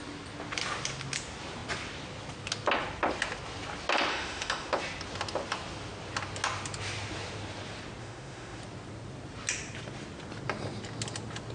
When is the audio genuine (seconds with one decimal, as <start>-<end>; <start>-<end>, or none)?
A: 0.0-4.1; 4.7-8.0; 8.6-11.5